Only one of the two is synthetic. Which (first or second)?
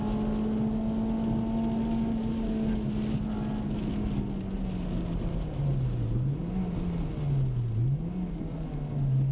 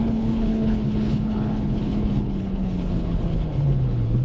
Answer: second